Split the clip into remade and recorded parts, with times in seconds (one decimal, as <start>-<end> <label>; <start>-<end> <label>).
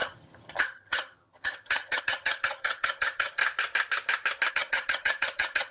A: 0.0-3.4 remade; 3.4-4.5 recorded; 4.5-5.7 remade